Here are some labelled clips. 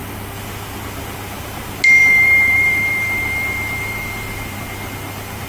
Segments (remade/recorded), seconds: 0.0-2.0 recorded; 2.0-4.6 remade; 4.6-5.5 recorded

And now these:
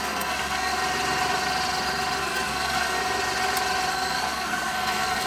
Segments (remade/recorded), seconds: 0.0-0.7 remade; 0.7-2.2 recorded; 2.2-3.0 remade; 3.0-3.9 recorded; 3.9-5.3 remade

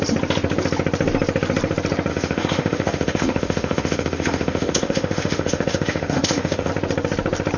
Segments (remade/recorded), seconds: 0.0-2.1 recorded; 2.1-6.7 remade; 6.7-7.6 recorded

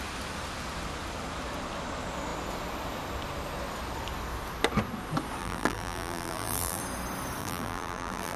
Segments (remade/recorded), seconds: 0.0-5.4 recorded; 5.4-6.8 remade; 6.8-7.4 recorded; 7.4-8.4 remade

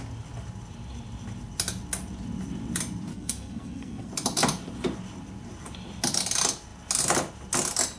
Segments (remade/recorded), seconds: 0.0-3.1 recorded; 3.1-4.1 remade; 4.1-8.0 recorded

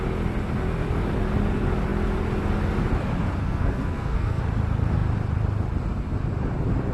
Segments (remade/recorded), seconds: 0.0-3.4 recorded; 3.4-4.4 remade; 4.4-6.9 recorded

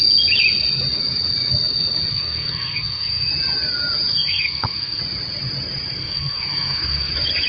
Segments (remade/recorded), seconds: 0.0-2.1 recorded; 2.1-3.3 remade; 3.3-4.1 recorded; 4.1-5.0 remade; 5.0-6.0 recorded; 6.0-7.1 remade; 7.1-7.5 recorded

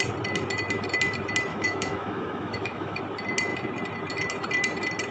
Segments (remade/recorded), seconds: 0.0-1.5 recorded; 1.5-3.0 remade; 3.0-5.1 recorded